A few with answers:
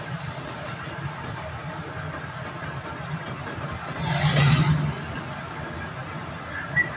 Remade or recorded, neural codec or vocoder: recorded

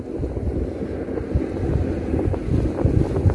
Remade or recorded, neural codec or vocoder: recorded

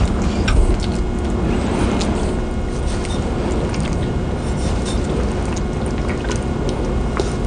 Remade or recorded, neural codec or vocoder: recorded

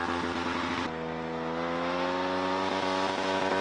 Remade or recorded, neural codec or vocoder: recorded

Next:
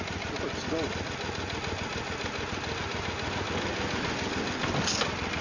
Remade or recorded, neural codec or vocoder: recorded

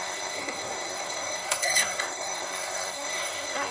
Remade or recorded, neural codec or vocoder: remade, codec, SNAC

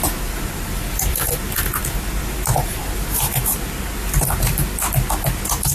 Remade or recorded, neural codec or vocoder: recorded